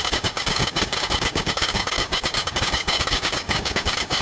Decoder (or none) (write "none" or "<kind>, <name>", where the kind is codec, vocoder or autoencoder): codec, DAC